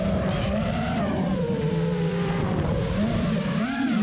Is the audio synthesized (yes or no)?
yes